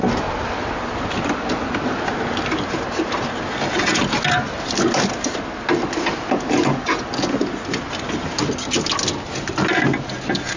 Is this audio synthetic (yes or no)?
no